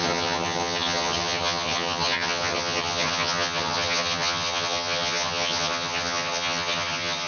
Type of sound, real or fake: fake